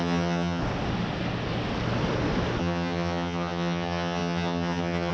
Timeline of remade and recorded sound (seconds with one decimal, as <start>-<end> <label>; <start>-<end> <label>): 0.0-0.6 remade; 0.6-2.6 recorded; 2.6-5.1 remade